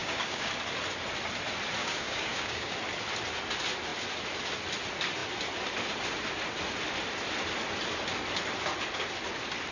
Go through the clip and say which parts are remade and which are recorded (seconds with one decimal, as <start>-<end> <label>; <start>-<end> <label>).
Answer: 0.0-0.5 remade; 0.5-1.8 recorded; 1.8-2.7 remade; 2.7-9.7 recorded